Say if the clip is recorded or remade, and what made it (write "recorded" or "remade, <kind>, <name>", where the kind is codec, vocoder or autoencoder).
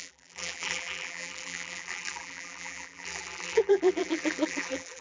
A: remade, vocoder, BigVGAN v2